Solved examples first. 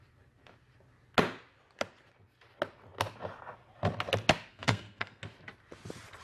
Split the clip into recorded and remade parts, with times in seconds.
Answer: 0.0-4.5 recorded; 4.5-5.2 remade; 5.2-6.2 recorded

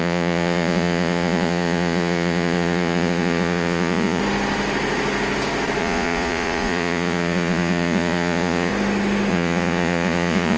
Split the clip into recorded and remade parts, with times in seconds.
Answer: 0.0-4.2 remade; 4.2-5.8 recorded; 5.8-8.7 remade; 8.7-9.3 recorded; 9.3-10.6 remade

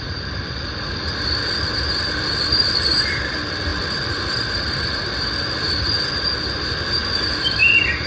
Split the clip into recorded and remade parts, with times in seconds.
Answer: 0.0-7.0 recorded; 7.0-8.1 remade

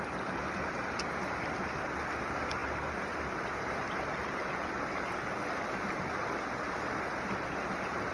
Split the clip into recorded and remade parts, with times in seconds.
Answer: 0.0-4.2 recorded; 4.2-6.5 remade; 6.5-8.1 recorded

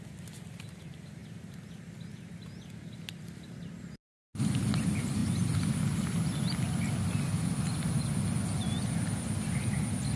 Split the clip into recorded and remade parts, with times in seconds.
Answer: 0.0-10.2 recorded

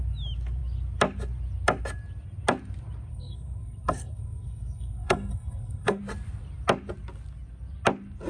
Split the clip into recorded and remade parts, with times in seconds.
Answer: 0.0-3.1 recorded; 3.1-6.0 remade; 6.0-8.3 recorded

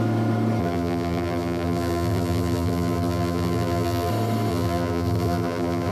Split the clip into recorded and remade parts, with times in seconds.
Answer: 0.0-0.6 recorded; 0.6-4.1 remade; 4.1-4.5 recorded; 4.5-5.9 remade